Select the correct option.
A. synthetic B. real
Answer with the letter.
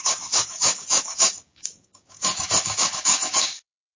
A